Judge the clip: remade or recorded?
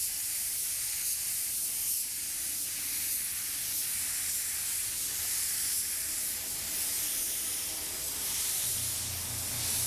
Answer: recorded